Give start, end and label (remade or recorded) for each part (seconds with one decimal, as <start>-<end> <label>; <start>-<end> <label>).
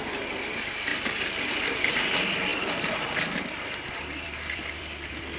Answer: 0.0-0.9 recorded; 0.9-1.9 remade; 1.9-2.5 recorded; 2.5-5.4 remade